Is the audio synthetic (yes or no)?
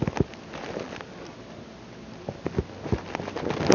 no